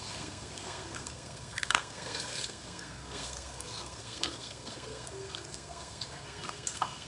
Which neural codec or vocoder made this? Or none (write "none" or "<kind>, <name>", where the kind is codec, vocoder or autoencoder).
codec, SNAC